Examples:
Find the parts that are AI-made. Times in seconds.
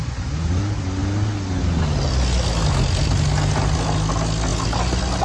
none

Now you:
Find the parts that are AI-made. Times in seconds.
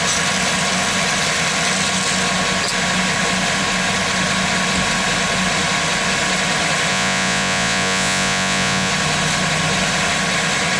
6.9-8.9 (vocoder, Vocos)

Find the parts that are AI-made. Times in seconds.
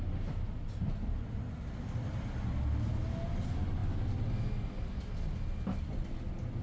none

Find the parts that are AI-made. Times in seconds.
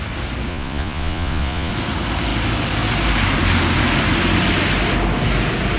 0.5-1.7 (vocoder, Vocos)